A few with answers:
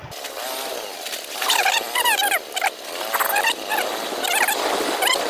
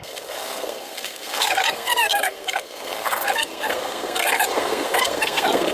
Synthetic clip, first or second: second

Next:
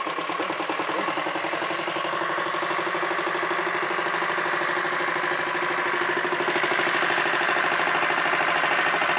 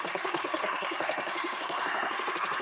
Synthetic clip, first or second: second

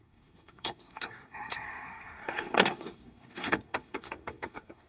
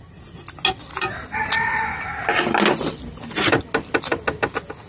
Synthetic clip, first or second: first